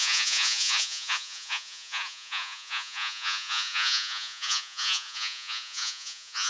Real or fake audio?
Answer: fake